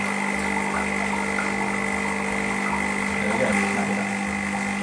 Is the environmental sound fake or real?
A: real